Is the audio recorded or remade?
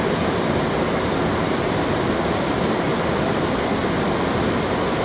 recorded